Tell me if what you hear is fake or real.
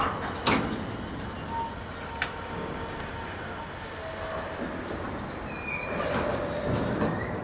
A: real